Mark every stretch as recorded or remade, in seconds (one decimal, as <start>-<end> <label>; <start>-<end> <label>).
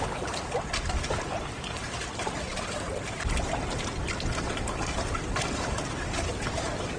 0.0-7.0 recorded